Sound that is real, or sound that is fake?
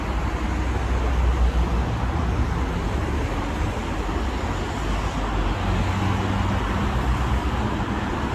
real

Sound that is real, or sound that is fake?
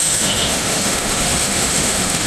fake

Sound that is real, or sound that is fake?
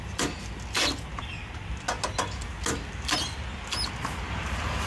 real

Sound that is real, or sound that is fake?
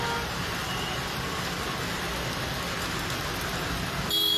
real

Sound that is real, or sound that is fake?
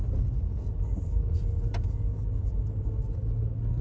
real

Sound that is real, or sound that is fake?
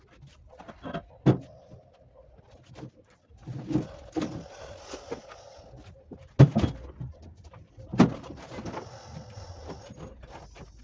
real